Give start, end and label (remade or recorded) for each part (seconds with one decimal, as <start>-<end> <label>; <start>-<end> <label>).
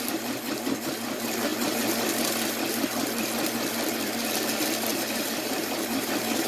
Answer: 0.0-4.9 recorded; 4.9-6.1 remade; 6.1-6.5 recorded